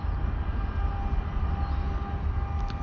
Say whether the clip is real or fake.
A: real